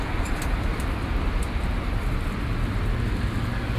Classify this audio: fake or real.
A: fake